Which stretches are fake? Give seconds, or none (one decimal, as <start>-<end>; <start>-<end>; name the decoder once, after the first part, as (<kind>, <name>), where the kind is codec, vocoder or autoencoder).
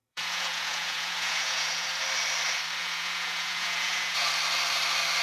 0.0-1.9 (vocoder, Vocos); 2.8-4.3